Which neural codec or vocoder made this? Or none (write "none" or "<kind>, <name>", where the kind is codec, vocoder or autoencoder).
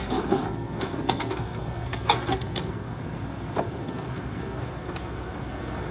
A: codec, SNAC